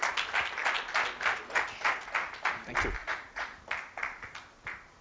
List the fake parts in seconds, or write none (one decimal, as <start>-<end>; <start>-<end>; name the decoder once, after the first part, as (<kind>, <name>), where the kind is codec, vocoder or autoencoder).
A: 3.0-3.6 (vocoder, Vocos)